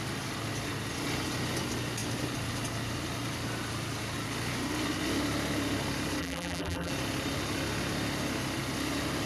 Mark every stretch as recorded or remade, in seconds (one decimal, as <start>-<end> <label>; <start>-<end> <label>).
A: 0.0-6.2 recorded; 6.2-6.9 remade; 6.9-9.3 recorded